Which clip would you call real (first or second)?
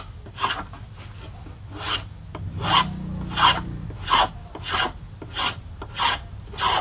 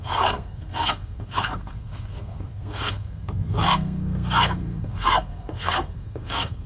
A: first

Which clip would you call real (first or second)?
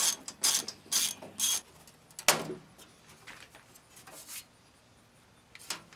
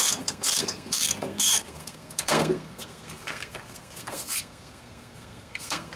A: first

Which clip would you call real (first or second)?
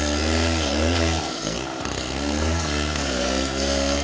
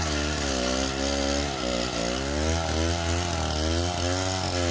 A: second